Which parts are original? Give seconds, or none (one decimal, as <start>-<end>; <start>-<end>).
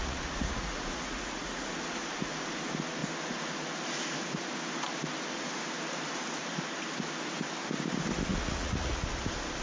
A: 1.7-8.3; 9.0-9.6